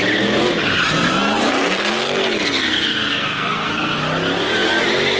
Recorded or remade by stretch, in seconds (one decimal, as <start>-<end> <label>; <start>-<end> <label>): 0.0-0.9 recorded; 0.9-4.0 remade; 4.0-5.2 recorded